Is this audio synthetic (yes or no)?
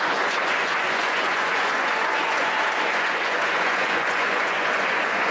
yes